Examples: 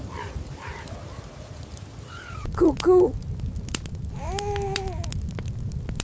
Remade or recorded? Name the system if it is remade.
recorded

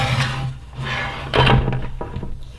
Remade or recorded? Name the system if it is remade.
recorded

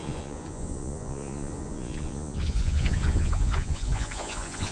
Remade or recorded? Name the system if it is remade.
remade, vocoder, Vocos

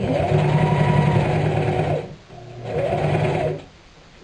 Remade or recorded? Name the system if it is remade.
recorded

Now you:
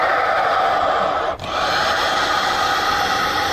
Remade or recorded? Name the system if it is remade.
recorded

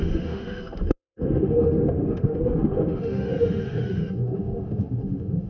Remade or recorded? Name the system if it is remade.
remade, autoencoder, DAC-VAE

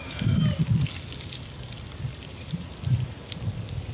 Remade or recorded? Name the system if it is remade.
recorded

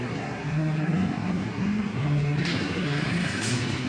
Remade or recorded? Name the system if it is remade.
remade, codec, SNAC